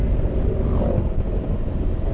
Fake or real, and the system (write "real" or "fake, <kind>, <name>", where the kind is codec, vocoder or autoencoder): real